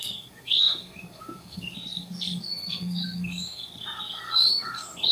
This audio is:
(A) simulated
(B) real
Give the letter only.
A